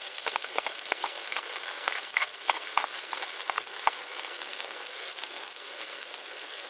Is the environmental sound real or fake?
fake